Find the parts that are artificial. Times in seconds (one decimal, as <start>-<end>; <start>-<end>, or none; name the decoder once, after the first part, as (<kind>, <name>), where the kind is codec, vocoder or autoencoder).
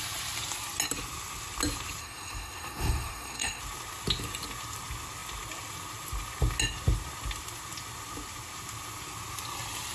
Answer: 2.0-3.6 (codec, SNAC)